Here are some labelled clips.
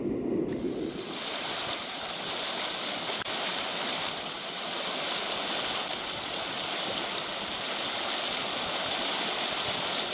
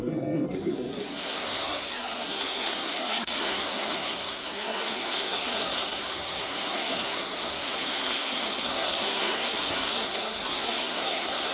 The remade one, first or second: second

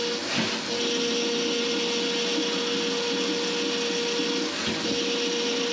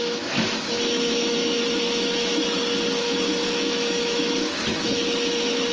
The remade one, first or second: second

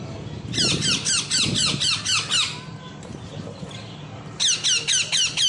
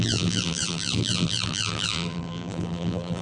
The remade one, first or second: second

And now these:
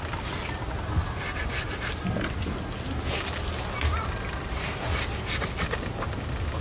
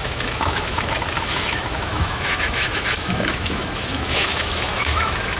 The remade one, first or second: second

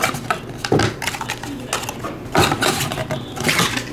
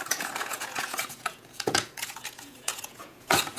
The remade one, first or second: second